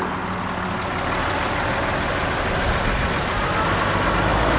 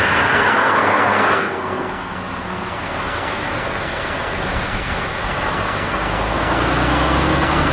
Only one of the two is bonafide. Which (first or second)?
first